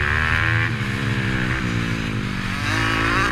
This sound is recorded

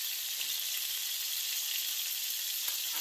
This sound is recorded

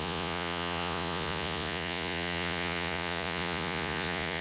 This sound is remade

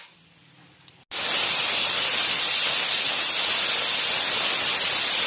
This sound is recorded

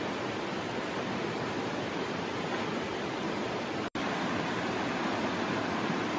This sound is recorded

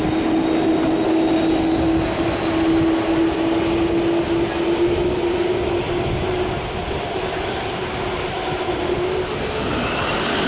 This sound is recorded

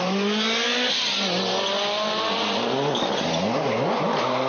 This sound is recorded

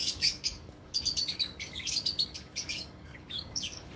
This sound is remade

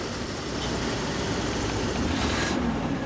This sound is remade